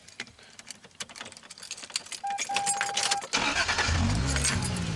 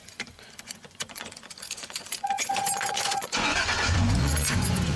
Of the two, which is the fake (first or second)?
second